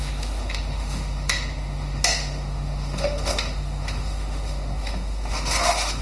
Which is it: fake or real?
fake